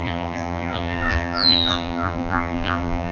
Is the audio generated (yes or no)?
yes